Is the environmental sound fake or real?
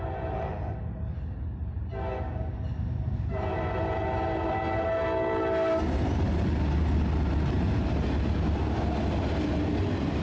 real